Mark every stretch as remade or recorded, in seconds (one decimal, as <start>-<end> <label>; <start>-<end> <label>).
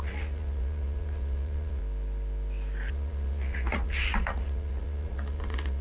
0.0-1.8 remade; 1.8-2.9 recorded; 2.9-5.8 remade